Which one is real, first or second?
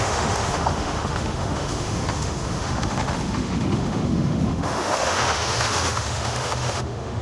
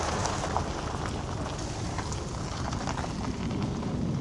second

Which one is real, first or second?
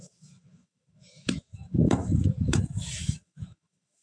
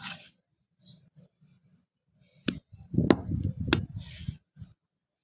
second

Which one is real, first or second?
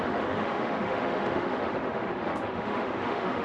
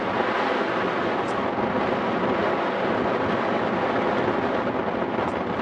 second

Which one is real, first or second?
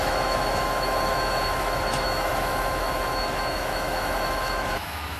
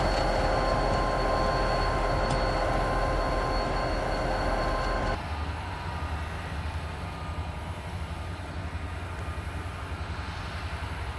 second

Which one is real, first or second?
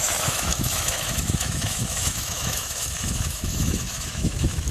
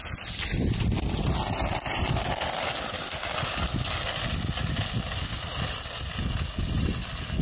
second